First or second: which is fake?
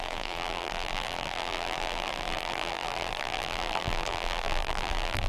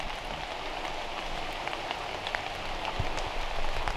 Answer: first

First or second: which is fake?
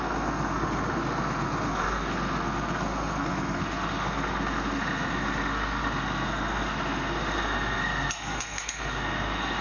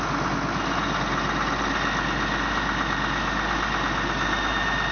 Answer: first